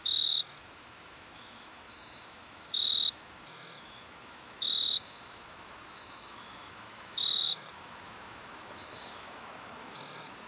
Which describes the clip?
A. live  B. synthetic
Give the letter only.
B